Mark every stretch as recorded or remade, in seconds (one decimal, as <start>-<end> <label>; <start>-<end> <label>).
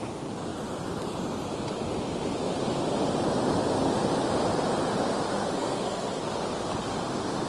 0.0-5.4 recorded; 5.4-6.3 remade; 6.3-7.5 recorded